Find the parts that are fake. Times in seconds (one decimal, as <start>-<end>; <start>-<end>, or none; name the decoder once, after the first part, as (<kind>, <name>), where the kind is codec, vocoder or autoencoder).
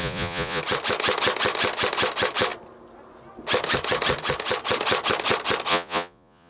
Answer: 0.0-0.6 (vocoder, Vocos); 5.7-6.5